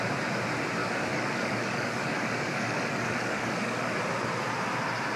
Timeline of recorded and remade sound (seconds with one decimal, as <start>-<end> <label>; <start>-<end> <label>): 0.0-0.8 recorded; 0.8-3.9 remade; 3.9-5.2 recorded